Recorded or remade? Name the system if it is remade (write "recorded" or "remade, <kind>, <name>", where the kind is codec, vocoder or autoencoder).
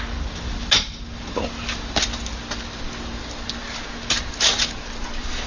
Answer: recorded